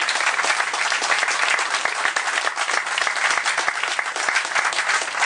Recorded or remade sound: recorded